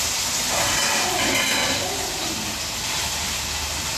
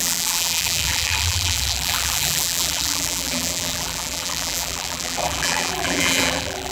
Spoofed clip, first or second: second